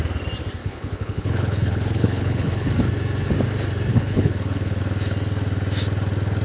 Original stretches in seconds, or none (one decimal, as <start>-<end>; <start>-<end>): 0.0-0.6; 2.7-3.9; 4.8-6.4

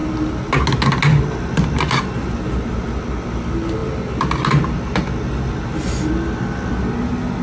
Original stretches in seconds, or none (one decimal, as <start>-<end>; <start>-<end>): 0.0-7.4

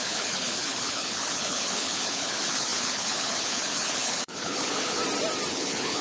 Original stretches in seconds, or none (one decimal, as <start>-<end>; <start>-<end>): 5.0-5.5

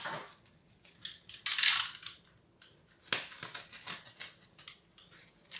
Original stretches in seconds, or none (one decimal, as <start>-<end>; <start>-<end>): 0.0-5.6

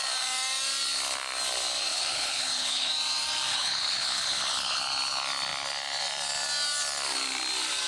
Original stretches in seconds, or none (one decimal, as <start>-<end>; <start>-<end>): 0.0-1.9; 2.9-3.5; 4.8-7.9